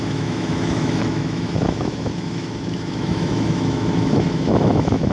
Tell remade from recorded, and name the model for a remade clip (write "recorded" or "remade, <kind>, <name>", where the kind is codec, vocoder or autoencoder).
remade, autoencoder, DAC-VAE